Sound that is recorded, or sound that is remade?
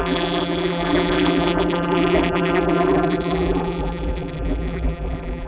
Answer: remade